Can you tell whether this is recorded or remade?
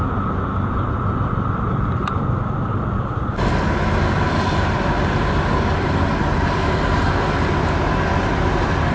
recorded